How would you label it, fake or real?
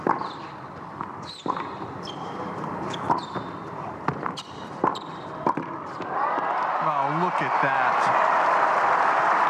fake